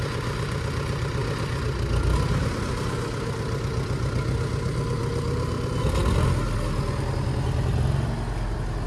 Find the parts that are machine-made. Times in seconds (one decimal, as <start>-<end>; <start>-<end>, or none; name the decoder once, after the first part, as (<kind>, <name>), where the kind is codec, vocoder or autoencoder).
none